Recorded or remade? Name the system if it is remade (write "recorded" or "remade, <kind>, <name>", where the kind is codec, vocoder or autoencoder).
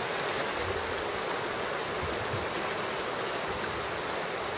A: recorded